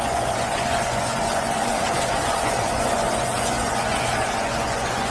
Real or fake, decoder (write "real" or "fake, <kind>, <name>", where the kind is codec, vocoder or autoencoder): fake, vocoder, Vocos